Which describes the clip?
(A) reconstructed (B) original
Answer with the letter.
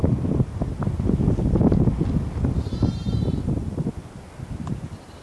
B